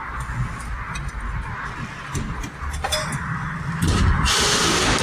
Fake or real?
real